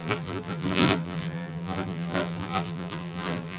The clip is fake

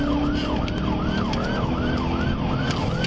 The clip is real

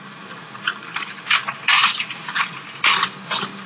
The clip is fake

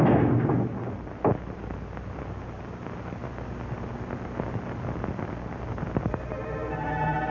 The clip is real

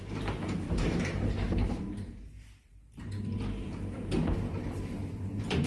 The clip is fake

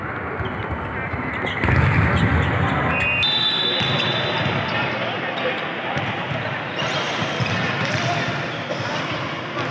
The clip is real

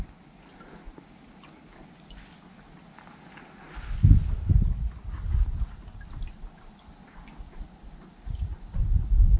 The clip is real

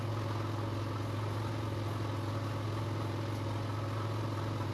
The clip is real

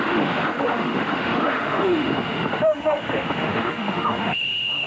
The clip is fake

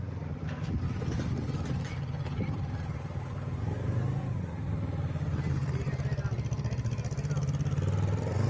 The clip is real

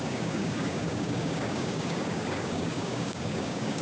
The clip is fake